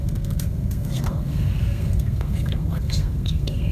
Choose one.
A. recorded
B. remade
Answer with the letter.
B